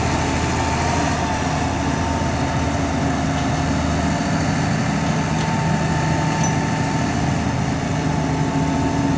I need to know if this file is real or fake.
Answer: real